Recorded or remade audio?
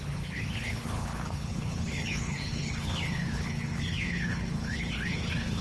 remade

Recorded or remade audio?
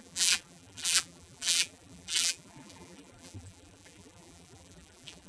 remade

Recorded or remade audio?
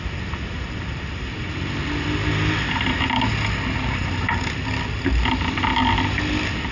recorded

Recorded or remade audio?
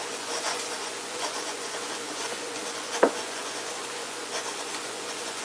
remade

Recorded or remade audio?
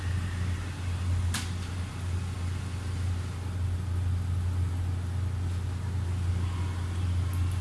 recorded